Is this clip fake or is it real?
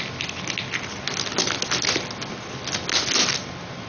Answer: real